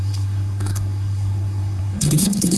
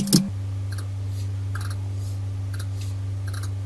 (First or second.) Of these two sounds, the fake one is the first